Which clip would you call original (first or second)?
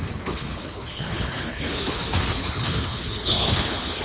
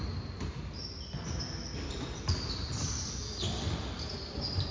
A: second